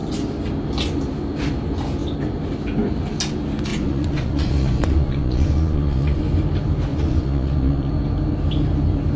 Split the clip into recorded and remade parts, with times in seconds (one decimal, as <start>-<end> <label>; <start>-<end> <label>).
0.0-3.7 recorded; 3.7-6.2 remade; 6.2-6.9 recorded; 6.9-7.9 remade; 7.9-9.2 recorded